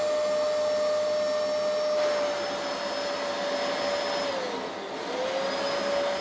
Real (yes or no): yes